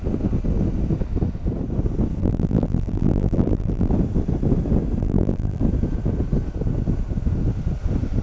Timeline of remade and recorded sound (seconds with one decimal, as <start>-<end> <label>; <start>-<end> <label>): 0.0-2.2 recorded; 2.2-3.9 remade; 3.9-5.0 recorded; 5.0-5.6 remade; 5.6-8.2 recorded